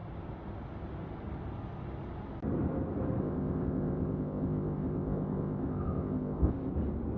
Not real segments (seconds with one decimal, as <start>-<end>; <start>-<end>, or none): 3.2-6.7